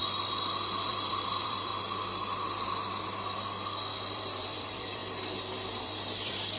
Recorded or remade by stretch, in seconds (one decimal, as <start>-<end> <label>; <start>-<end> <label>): 0.0-0.9 recorded; 0.9-1.7 remade; 1.7-4.1 recorded; 4.1-5.0 remade; 5.0-5.8 recorded; 5.8-6.6 remade